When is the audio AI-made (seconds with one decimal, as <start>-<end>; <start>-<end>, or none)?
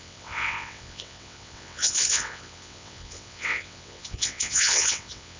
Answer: 0.0-5.4